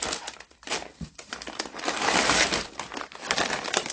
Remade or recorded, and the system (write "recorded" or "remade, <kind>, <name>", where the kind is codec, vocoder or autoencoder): recorded